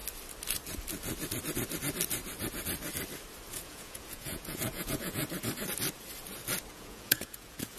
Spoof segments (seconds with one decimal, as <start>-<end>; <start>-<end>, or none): 3.5-5.2; 6.7-7.8